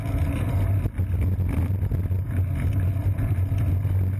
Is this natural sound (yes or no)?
yes